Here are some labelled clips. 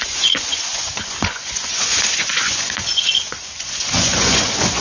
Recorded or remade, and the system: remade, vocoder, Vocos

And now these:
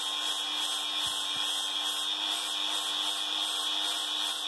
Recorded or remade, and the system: recorded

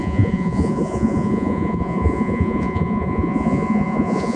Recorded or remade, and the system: remade, vocoder, Vocos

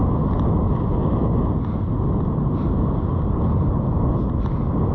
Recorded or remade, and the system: recorded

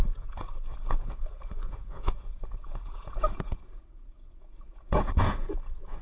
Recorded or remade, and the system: remade, vocoder, Vocos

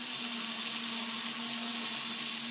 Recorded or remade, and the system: recorded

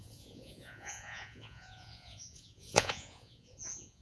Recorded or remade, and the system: remade, vocoder, Vocos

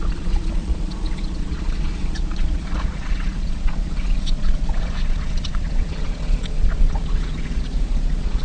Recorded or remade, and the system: remade, vocoder, Vocos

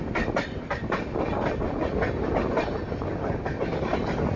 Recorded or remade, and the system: recorded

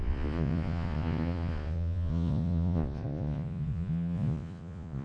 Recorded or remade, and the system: remade, vocoder, Vocos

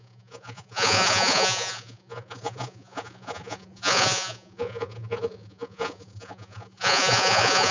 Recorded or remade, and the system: remade, vocoder, Vocos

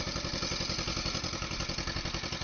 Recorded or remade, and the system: recorded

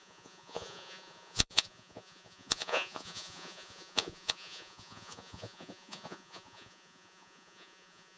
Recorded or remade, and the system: remade, vocoder, Vocos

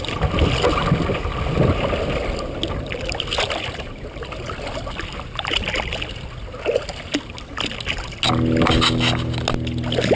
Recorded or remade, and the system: recorded